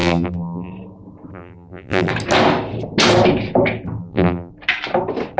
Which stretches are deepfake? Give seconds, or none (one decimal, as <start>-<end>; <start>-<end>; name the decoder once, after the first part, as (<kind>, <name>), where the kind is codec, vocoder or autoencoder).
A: 0.0-0.7 (vocoder, BigVGAN v2); 1.3-2.1; 4.0-4.5